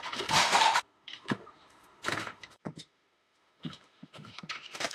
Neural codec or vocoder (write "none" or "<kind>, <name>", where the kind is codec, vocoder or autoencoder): autoencoder, DAC-VAE